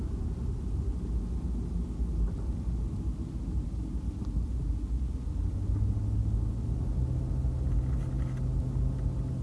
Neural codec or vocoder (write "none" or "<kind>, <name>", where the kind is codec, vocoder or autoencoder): none